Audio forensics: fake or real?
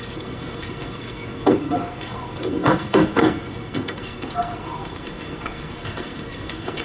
fake